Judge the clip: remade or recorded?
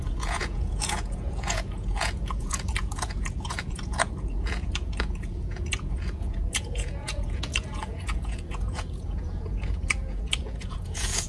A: remade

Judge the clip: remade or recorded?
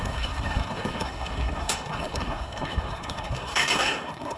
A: remade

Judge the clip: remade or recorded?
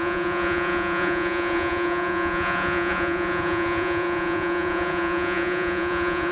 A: remade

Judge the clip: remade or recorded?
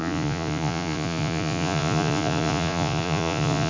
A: remade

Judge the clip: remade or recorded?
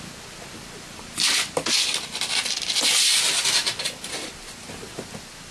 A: remade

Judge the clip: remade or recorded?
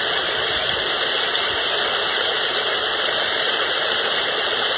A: recorded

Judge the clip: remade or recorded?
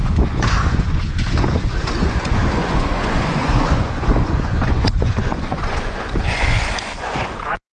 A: remade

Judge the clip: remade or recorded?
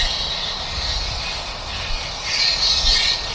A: recorded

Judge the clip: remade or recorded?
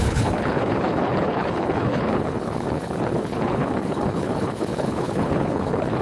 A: remade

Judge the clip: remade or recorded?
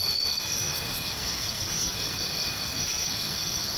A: remade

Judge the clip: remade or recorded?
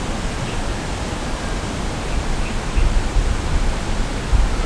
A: recorded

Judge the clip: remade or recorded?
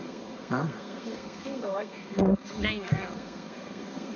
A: remade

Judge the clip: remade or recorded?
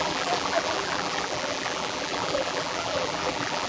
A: remade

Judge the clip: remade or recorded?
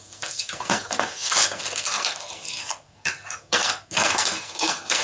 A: remade